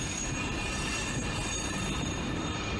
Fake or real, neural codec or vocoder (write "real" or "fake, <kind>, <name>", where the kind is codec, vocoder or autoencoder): fake, vocoder, BigVGAN v2